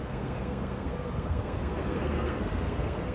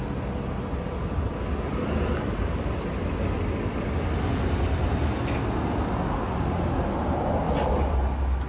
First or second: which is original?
second